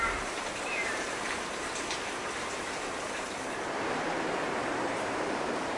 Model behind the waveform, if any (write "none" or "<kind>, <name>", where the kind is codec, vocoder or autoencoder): vocoder, BigVGAN v2